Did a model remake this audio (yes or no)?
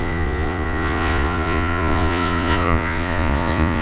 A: yes